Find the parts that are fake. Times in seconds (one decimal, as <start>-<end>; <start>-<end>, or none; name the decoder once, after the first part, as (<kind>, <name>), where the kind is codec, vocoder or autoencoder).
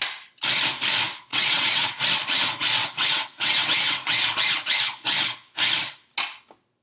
1.3-2.0 (vocoder, WaveNeXt); 2.8-4.2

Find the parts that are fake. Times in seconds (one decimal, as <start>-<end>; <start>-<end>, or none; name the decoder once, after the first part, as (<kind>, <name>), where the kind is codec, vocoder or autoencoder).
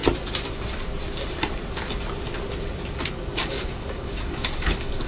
3.1-5.1 (codec, DAC)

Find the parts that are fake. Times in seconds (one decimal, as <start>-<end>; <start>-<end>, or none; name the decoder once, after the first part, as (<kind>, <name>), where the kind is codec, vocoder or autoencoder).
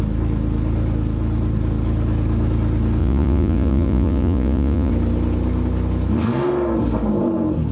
3.0-4.9 (vocoder, Vocos)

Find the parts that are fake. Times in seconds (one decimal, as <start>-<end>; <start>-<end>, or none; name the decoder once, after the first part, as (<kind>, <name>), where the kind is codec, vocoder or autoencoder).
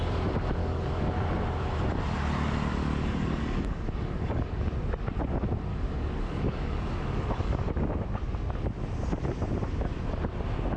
0.6-1.1 (codec, DAC); 2.7-4.6; 5.7-7.7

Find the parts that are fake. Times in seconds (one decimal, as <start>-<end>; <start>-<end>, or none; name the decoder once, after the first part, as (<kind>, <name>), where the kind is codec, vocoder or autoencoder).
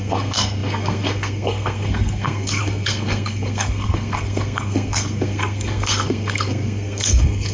0.0-7.5 (codec, SNAC)